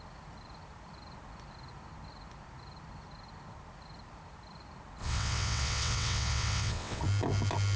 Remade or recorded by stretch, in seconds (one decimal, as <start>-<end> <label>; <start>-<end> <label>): 0.0-5.0 recorded; 5.0-7.0 remade; 7.0-7.8 recorded